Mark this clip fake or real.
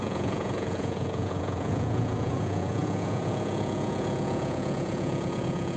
fake